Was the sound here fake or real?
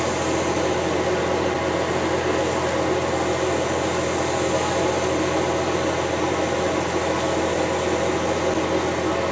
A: real